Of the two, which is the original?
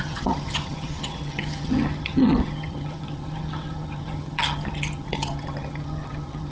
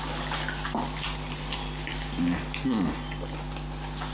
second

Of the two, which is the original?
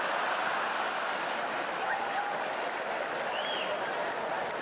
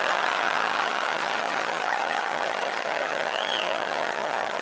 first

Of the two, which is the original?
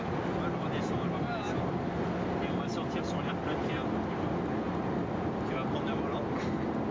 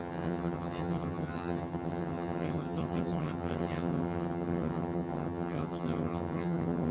first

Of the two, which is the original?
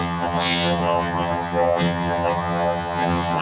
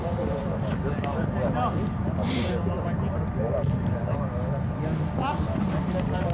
second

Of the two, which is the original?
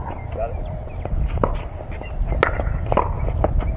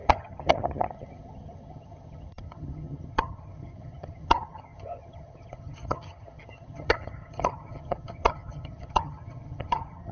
first